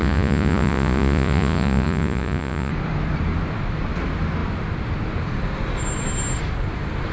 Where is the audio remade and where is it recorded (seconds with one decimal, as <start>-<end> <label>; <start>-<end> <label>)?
0.0-2.7 remade; 2.7-7.1 recorded

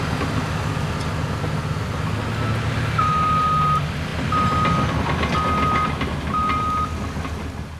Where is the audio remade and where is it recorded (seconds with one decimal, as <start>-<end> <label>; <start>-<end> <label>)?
0.0-7.8 recorded